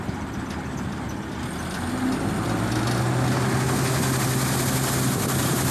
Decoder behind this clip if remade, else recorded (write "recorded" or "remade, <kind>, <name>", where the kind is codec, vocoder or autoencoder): recorded